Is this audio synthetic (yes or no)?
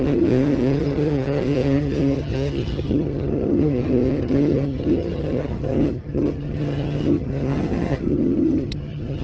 yes